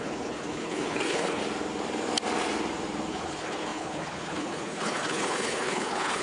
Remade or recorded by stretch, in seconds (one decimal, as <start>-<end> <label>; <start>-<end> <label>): 0.0-1.4 remade; 1.4-3.1 recorded; 3.1-6.2 remade